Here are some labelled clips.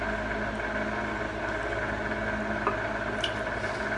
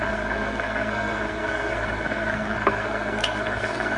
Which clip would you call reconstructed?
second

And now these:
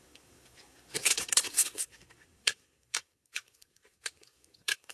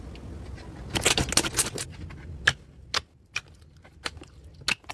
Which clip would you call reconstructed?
first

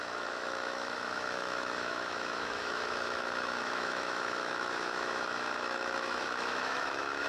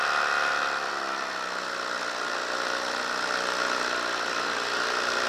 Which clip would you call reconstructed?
first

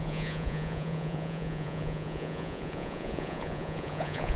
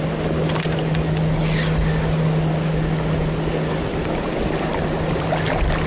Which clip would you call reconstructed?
first